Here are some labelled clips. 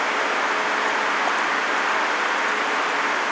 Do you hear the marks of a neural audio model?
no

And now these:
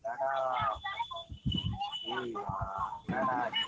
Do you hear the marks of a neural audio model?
no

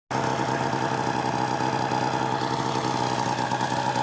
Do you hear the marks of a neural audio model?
no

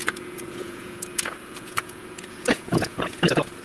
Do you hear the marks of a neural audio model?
yes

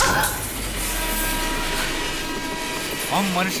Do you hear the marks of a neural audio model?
no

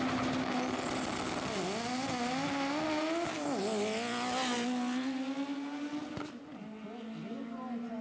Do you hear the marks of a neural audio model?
no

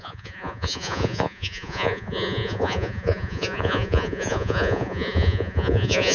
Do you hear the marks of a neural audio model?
yes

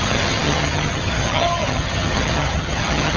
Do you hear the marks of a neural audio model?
yes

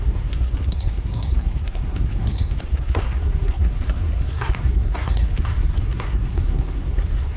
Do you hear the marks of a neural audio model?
yes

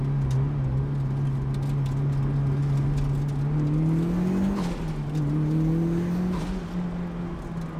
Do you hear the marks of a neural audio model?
no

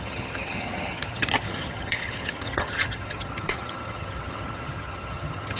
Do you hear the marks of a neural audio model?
yes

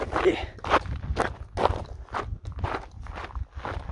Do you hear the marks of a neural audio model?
no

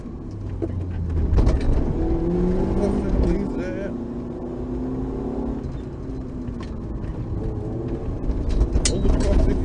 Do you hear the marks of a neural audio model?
no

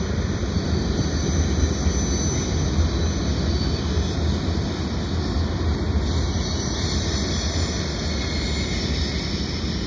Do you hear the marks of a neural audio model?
no